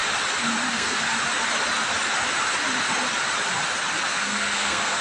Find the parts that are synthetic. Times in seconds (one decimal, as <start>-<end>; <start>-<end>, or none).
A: 0.7-1.1; 4.1-5.0